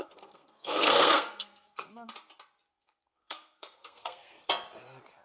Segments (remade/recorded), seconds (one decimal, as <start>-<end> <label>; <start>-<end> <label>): 0.0-2.1 remade; 2.1-2.7 recorded; 2.7-4.4 remade; 4.4-5.2 recorded